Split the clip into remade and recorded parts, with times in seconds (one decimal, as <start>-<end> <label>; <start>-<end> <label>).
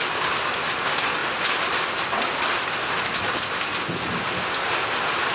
0.0-5.3 recorded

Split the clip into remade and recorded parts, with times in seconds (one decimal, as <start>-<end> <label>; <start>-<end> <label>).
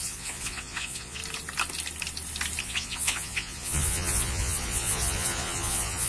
0.0-1.2 remade; 1.2-2.6 recorded; 2.6-6.1 remade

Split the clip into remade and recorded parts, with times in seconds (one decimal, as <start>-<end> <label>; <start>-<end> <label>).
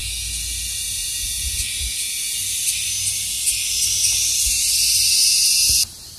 0.0-6.2 recorded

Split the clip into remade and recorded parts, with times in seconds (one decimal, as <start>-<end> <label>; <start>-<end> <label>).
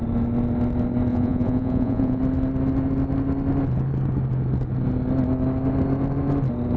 0.0-1.1 recorded; 1.1-2.2 remade; 2.2-6.8 recorded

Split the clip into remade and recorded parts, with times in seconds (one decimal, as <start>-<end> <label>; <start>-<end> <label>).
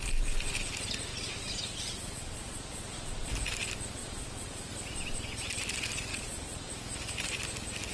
0.0-1.1 recorded; 1.1-3.3 remade; 3.3-4.0 recorded; 4.0-4.7 remade; 4.7-6.1 recorded; 6.1-6.7 remade; 6.7-7.9 recorded